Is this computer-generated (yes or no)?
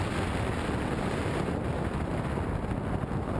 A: no